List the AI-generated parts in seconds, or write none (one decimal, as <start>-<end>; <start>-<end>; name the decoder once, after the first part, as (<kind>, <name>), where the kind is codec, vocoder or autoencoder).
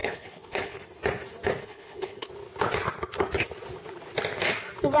0.0-0.8 (codec, HILCodec); 1.6-2.3